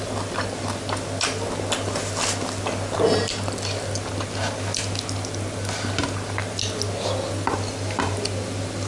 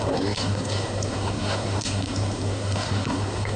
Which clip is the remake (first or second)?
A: second